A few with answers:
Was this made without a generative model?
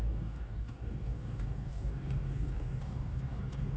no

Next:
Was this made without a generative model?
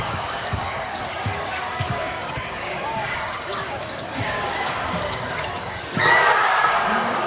no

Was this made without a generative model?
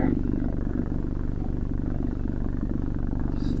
yes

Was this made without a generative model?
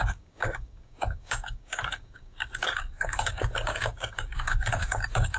no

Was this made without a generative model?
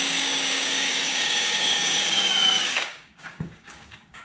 no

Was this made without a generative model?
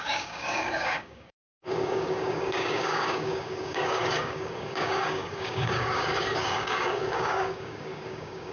no